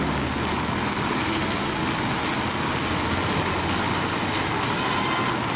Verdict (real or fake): real